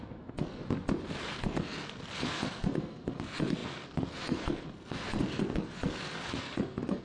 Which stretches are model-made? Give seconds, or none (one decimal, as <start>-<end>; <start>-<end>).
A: 0.0-0.6; 1.2-7.0